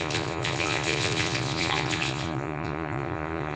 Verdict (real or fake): fake